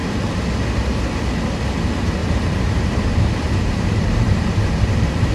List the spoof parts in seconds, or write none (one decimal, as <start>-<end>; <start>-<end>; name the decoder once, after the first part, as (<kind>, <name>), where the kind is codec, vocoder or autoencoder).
2.2-5.3 (vocoder, BigVGAN v2)